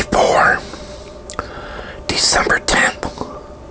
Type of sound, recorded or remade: recorded